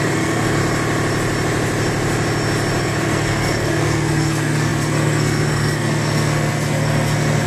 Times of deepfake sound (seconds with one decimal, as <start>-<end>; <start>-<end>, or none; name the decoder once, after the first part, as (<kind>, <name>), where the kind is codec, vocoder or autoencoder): 0.0-0.6 (codec, SNAC); 2.8-7.5